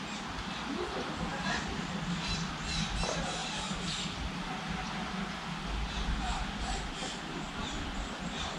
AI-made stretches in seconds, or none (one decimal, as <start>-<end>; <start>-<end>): 1.3-2.5; 3.4-5.1; 7.6-8.6